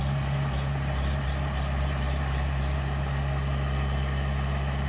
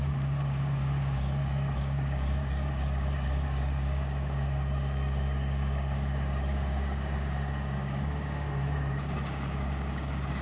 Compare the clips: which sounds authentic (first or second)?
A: first